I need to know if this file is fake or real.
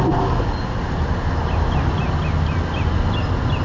real